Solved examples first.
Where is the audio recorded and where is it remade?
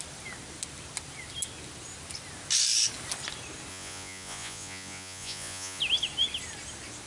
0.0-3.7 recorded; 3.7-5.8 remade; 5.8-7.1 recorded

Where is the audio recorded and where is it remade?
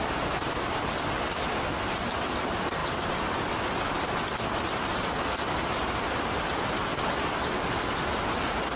0.0-8.8 recorded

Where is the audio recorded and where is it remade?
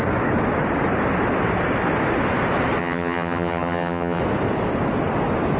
0.0-2.8 recorded; 2.8-4.2 remade; 4.2-5.6 recorded